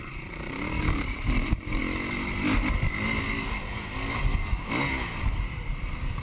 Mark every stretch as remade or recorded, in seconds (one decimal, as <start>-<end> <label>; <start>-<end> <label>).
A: 0.0-1.8 remade; 1.8-5.5 recorded; 5.5-6.2 remade